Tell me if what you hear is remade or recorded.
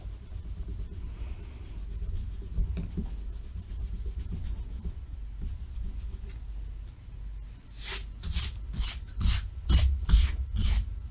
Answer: recorded